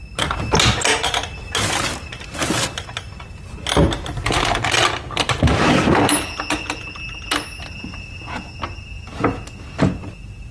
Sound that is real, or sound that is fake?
real